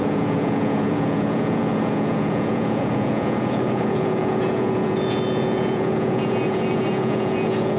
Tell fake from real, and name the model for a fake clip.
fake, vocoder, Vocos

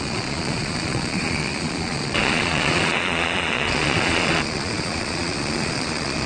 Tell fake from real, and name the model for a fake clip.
fake, vocoder, Vocos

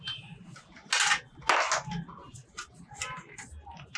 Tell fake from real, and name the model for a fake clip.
real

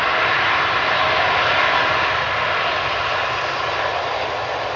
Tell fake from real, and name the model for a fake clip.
real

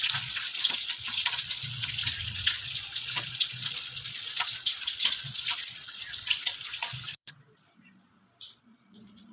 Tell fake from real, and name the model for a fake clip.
fake, vocoder, Vocos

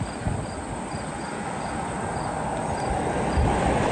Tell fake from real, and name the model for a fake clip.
real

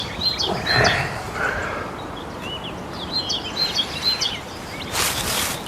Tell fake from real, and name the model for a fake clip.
real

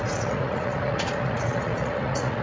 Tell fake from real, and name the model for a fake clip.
fake, vocoder, Vocos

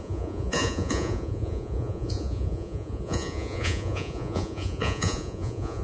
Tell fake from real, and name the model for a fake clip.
fake, vocoder, Vocos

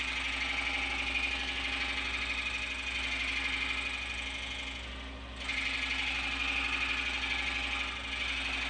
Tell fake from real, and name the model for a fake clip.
real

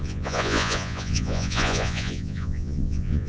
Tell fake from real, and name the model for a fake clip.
fake, vocoder, Vocos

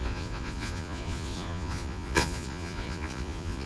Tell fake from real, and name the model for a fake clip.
fake, vocoder, Vocos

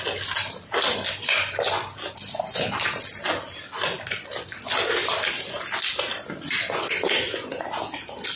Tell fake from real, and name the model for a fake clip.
real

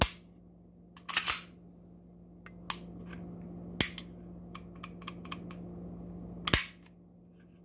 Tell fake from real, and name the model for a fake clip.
real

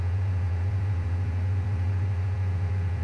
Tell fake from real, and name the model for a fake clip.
fake, vocoder, Vocos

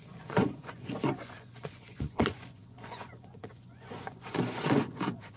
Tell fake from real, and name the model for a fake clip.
fake, vocoder, Vocos